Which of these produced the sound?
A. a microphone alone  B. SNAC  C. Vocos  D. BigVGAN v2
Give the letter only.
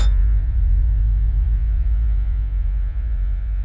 C